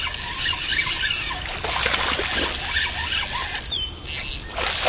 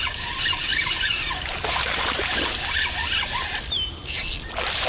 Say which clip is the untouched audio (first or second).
first